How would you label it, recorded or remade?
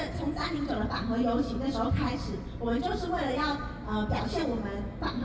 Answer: recorded